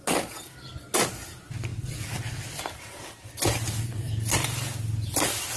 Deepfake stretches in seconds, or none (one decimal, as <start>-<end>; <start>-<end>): none